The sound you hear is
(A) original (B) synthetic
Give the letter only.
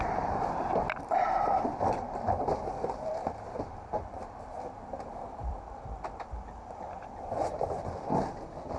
B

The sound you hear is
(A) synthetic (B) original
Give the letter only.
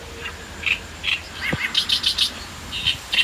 B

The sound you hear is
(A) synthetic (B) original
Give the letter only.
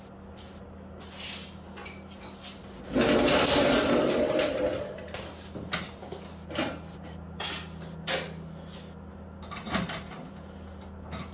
B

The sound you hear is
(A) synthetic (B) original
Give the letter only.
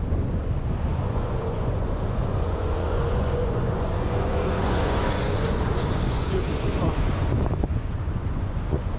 A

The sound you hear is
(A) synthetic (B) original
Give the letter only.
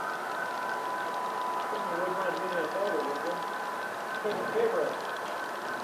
B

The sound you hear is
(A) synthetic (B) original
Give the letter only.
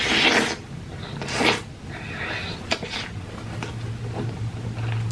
B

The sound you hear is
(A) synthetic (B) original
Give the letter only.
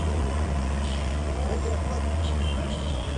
A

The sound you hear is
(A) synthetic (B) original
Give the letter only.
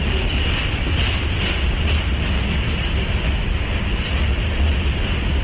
B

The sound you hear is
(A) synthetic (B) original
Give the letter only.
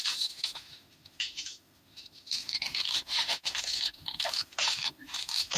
A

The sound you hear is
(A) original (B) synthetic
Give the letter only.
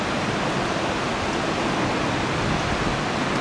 A